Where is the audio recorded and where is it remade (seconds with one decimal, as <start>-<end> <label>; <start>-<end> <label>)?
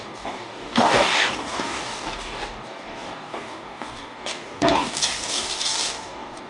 0.0-6.5 remade